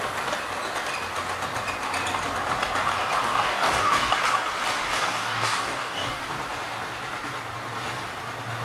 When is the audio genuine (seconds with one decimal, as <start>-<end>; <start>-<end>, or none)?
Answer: 0.0-3.3; 4.1-4.9; 6.3-8.6